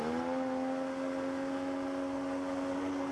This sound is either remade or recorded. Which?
recorded